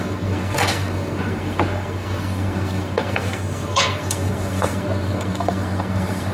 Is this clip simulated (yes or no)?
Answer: yes